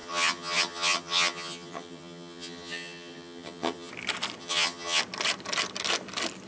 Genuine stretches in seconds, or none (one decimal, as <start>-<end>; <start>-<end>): 3.9-4.4; 5.0-6.5